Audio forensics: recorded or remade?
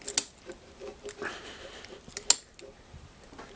recorded